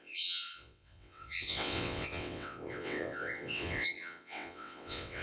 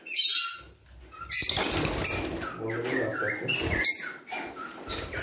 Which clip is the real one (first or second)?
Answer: second